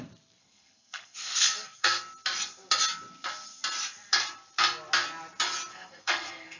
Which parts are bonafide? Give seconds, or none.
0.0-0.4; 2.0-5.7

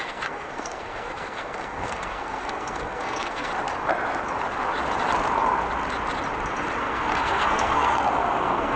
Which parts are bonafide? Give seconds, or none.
3.5-6.8

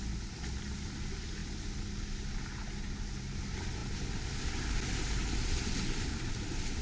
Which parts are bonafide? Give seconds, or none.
0.0-6.8

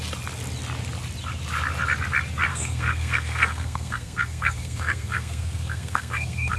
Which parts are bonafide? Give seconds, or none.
0.0-2.5